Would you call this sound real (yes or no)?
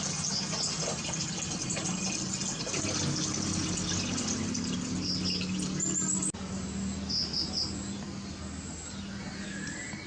yes